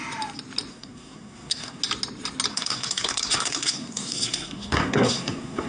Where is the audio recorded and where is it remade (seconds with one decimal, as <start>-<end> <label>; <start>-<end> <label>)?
0.0-0.7 recorded; 0.7-1.8 remade; 1.8-2.5 recorded; 2.5-5.7 remade